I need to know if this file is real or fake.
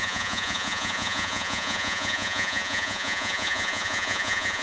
fake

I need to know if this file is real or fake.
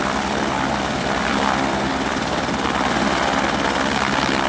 real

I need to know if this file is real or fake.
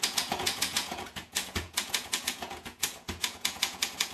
fake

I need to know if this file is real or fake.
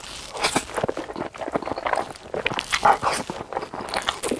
real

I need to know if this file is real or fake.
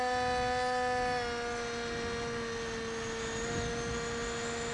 real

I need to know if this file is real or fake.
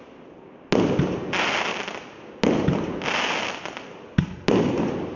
real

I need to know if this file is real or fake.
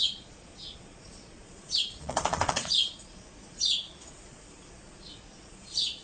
fake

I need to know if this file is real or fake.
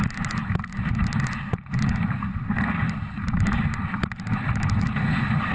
real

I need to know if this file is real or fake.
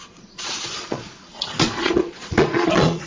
fake